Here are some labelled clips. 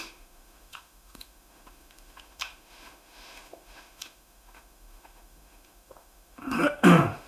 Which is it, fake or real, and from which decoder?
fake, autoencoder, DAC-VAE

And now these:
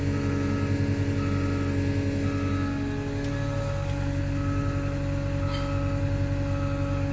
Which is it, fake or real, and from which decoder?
real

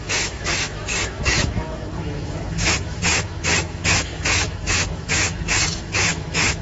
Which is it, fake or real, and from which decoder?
fake, autoencoder, DAC-VAE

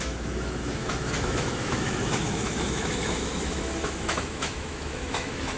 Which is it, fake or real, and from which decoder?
fake, autoencoder, DAC-VAE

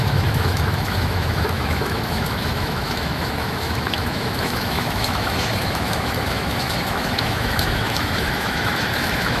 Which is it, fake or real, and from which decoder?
fake, autoencoder, DAC-VAE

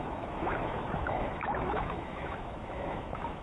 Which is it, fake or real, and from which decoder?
fake, autoencoder, DAC-VAE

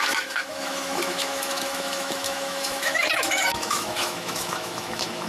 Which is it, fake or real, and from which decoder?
fake, autoencoder, DAC-VAE